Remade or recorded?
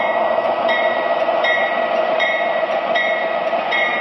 remade